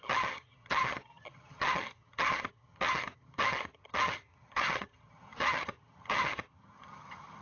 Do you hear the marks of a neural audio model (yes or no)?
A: yes